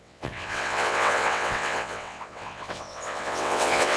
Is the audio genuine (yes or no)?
no